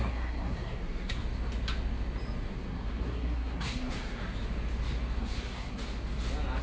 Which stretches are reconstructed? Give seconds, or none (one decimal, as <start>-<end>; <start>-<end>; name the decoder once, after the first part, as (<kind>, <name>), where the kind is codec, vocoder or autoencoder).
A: 0.0-1.2 (codec, SNAC); 2.5-4.2; 5.2-5.8